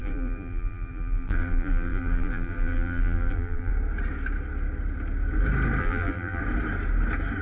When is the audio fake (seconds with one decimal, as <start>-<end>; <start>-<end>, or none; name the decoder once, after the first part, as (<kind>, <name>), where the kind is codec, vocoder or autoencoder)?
0.0-3.7 (vocoder, BigVGAN v2); 5.8-6.4